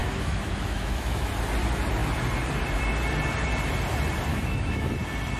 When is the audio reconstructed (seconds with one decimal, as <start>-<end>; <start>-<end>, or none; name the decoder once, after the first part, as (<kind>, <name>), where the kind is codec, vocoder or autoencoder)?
0.0-1.3 (autoencoder, DAC-VAE); 4.3-4.9